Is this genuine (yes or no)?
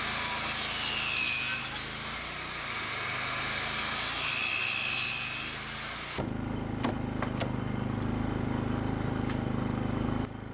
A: yes